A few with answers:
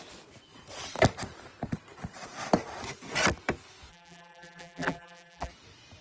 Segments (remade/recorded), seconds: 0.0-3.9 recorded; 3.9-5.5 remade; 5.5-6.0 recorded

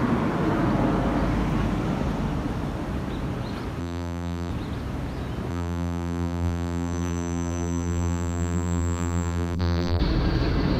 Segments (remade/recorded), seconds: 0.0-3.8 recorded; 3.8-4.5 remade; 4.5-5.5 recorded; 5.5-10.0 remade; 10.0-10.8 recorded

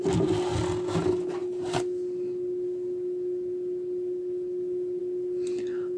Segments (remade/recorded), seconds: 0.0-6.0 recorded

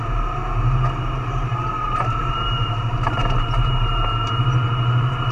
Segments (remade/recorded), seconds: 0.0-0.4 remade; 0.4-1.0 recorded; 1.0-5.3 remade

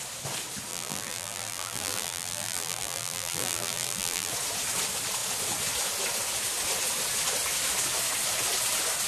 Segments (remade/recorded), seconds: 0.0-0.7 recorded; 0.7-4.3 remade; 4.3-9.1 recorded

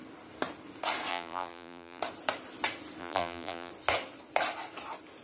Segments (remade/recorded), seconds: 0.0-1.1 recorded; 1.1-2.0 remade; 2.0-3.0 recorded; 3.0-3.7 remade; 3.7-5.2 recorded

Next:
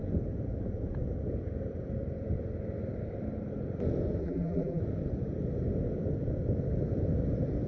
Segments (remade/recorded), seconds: 0.0-4.2 recorded; 4.2-4.8 remade; 4.8-7.7 recorded

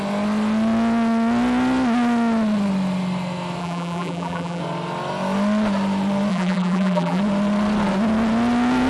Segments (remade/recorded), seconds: 0.0-3.6 recorded; 3.6-4.6 remade; 4.6-6.3 recorded; 6.3-7.2 remade; 7.2-8.9 recorded